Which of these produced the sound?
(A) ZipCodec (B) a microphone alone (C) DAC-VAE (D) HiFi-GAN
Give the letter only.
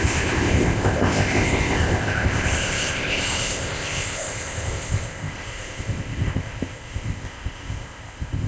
A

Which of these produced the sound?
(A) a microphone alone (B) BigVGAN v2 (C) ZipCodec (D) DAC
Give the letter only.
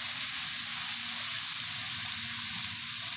A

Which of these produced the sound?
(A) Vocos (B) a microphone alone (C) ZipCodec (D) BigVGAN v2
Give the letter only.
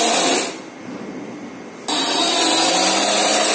B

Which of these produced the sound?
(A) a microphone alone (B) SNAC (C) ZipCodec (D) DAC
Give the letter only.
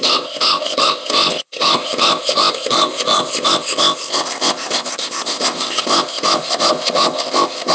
C